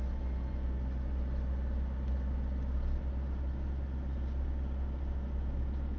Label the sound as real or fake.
real